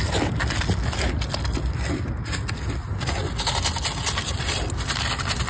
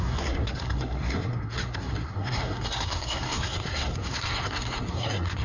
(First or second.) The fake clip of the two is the second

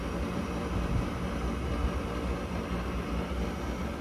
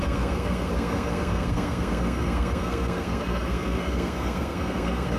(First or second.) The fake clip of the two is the second